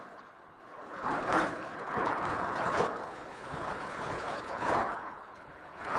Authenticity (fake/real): fake